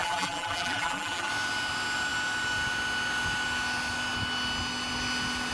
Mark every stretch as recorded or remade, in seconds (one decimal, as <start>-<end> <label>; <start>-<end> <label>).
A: 0.0-1.3 remade; 1.3-5.5 recorded

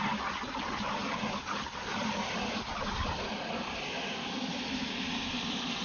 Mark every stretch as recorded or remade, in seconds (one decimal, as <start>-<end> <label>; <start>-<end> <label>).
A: 0.0-1.9 recorded; 1.9-5.8 remade

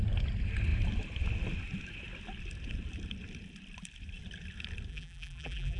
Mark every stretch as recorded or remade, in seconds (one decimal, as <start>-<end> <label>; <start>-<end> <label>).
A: 0.0-4.9 recorded; 4.9-5.8 remade

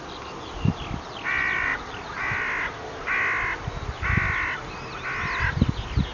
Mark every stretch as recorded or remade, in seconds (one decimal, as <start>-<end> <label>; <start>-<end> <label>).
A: 0.0-6.1 recorded

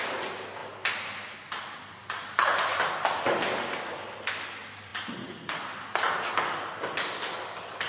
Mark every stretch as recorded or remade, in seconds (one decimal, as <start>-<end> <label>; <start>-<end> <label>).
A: 0.0-7.9 recorded

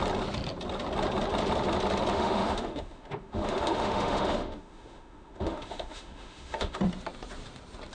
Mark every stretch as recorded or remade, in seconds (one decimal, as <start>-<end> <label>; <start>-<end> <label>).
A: 0.0-2.1 recorded; 2.1-6.8 remade; 6.8-7.9 recorded

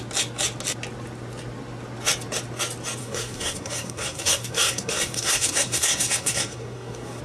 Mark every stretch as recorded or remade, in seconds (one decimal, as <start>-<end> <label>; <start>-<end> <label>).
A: 0.0-3.0 recorded; 3.0-7.2 remade

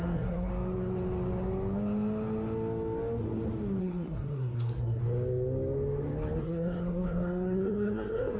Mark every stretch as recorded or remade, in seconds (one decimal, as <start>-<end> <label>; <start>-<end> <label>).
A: 0.0-0.5 remade; 0.5-3.8 recorded; 3.8-5.0 remade; 5.0-6.4 recorded; 6.4-8.4 remade